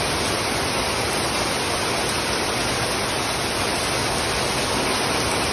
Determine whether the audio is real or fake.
real